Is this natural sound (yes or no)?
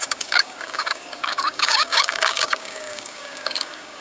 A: no